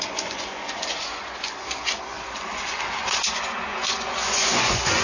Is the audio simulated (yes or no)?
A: yes